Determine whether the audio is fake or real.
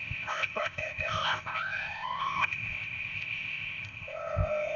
fake